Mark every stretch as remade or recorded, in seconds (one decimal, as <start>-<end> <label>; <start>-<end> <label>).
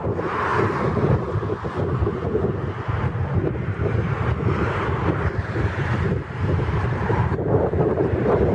0.0-0.5 remade; 0.5-2.9 recorded; 2.9-4.7 remade; 4.7-5.4 recorded; 5.4-8.5 remade